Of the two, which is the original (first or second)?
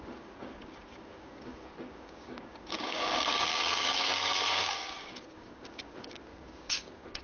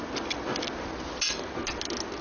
second